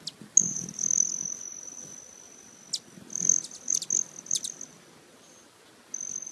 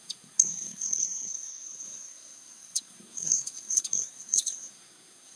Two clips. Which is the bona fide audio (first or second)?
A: first